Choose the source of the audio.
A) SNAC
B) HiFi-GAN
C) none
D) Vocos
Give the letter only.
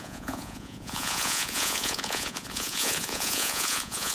D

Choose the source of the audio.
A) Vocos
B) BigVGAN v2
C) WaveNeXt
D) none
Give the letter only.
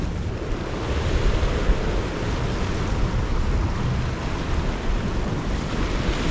D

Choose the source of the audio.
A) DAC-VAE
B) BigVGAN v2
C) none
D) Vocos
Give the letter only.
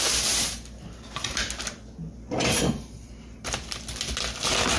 C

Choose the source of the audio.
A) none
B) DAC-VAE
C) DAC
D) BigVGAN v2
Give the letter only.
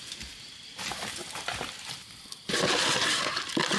A